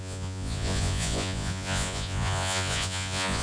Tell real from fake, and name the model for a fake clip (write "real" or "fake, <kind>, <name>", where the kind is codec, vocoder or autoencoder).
fake, vocoder, Vocos